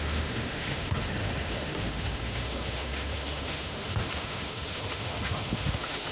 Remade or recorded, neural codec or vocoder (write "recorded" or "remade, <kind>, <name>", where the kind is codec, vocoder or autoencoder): remade, autoencoder, DAC-VAE